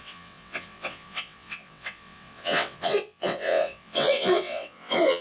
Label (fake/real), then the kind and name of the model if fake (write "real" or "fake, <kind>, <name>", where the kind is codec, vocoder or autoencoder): fake, vocoder, WaveNeXt